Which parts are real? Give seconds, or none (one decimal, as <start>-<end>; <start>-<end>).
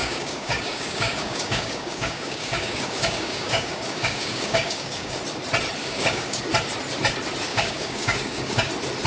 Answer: 5.2-5.8; 6.4-7.5; 8.7-9.1